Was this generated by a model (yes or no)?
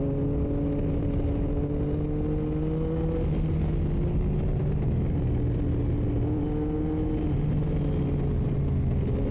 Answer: no